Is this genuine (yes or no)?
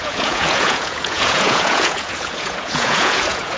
no